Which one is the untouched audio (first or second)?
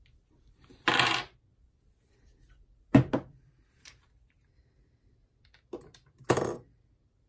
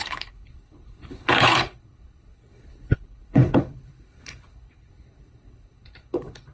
first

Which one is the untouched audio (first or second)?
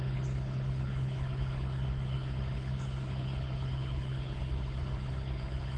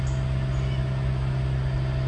second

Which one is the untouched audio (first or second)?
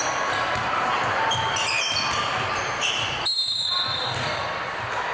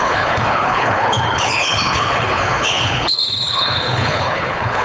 first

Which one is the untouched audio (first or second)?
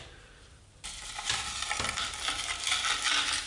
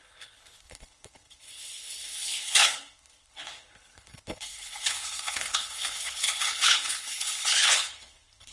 first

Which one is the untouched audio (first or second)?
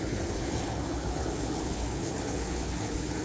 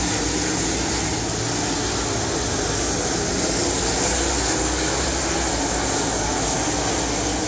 second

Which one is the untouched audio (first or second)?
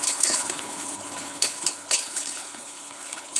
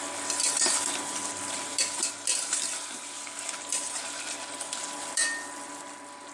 second